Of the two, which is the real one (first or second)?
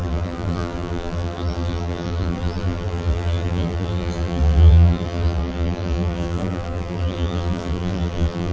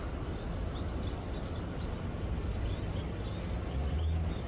second